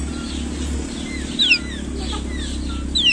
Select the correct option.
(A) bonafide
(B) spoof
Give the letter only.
A